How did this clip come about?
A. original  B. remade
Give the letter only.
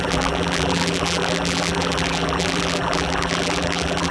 B